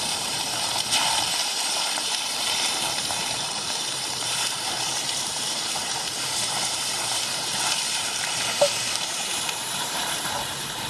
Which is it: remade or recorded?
remade